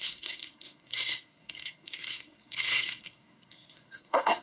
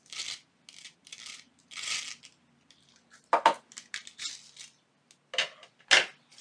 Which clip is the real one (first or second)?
second